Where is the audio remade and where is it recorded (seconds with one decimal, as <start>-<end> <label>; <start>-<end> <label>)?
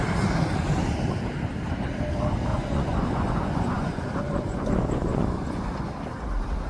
0.0-2.5 recorded; 2.5-5.9 remade; 5.9-6.7 recorded